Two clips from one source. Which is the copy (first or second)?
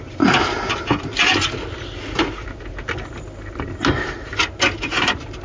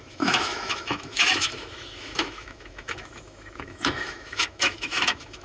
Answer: second